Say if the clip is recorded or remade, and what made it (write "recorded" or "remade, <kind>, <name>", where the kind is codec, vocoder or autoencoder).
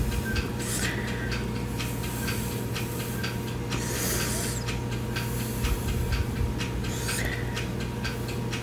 recorded